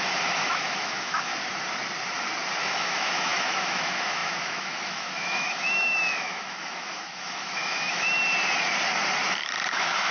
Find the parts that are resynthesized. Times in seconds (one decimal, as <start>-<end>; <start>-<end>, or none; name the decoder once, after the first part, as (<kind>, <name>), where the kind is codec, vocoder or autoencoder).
0.0-1.3 (autoencoder, DAC-VAE); 2.6-8.2; 9.7-10.1